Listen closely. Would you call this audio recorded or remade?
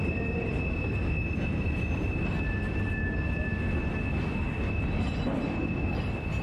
recorded